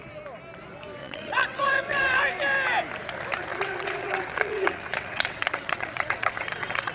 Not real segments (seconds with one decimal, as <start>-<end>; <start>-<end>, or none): 1.0-2.2; 3.5-6.9